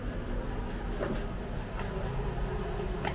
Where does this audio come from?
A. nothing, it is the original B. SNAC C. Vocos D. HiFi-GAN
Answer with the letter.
A